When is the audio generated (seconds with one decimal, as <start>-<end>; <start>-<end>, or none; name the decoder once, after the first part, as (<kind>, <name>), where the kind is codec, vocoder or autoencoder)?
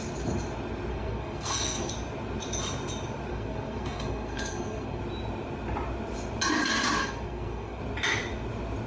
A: 0.9-1.9 (codec, SNAC); 3.3-5.0; 7.0-7.8